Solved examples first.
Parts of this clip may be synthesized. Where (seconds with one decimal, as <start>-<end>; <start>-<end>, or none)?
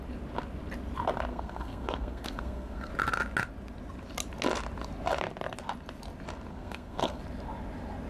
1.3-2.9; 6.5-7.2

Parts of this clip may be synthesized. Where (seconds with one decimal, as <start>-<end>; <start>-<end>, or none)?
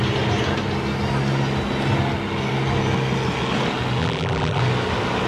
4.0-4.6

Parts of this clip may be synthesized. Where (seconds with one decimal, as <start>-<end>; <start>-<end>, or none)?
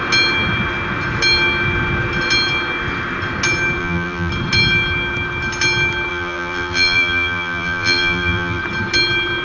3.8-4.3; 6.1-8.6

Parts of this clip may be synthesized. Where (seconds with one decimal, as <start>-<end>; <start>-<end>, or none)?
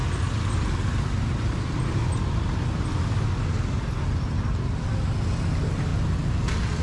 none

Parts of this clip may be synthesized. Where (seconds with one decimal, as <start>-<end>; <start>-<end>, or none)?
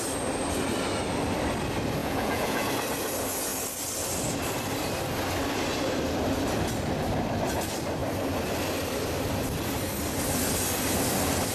2.0-2.7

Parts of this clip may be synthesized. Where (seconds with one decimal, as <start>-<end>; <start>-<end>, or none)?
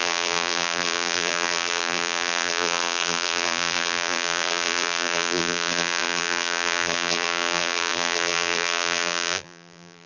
0.0-10.1